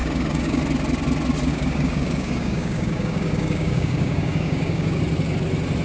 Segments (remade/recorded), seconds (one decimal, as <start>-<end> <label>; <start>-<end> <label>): 0.0-0.6 remade; 0.6-1.5 recorded; 1.5-5.0 remade; 5.0-5.8 recorded